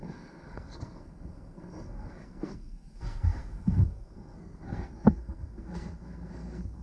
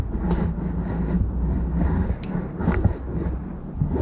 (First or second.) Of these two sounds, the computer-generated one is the first